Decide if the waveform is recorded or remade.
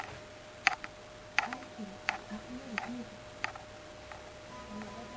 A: recorded